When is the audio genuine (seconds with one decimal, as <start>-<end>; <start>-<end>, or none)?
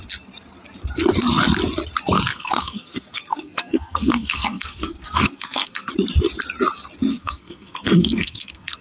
0.0-2.3; 5.9-7.1